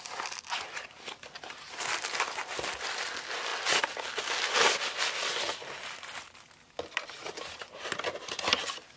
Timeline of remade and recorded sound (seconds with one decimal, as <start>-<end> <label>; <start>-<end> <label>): 0.0-9.0 recorded